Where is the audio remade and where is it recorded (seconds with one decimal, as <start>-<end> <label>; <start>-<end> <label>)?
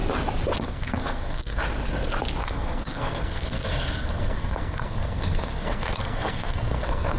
0.0-0.6 recorded; 0.6-1.6 remade; 1.6-2.4 recorded; 2.4-7.2 remade